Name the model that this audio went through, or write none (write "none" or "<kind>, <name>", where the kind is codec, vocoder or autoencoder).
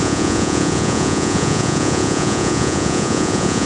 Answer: vocoder, Vocos